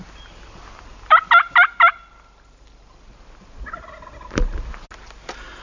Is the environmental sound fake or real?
real